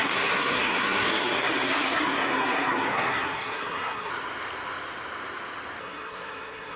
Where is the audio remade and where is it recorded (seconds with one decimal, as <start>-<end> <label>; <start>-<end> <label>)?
0.0-4.1 remade; 4.1-5.8 recorded; 5.8-6.8 remade